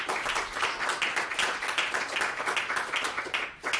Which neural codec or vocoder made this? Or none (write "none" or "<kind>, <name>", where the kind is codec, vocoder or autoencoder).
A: none